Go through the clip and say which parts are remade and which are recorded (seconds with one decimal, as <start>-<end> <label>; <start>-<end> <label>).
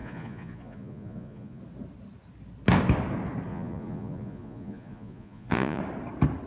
0.0-1.6 remade; 1.6-3.5 recorded; 3.5-5.8 remade; 5.8-6.5 recorded